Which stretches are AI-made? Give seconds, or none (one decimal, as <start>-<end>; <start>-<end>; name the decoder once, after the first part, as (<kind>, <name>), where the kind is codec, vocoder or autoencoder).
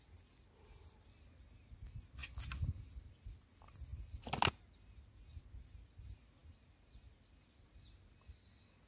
none